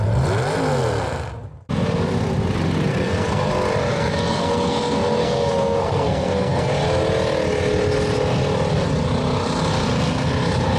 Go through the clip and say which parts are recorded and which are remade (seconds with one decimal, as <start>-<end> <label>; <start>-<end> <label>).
0.0-2.9 recorded; 2.9-3.5 remade; 3.5-3.9 recorded; 3.9-6.7 remade; 6.7-10.8 recorded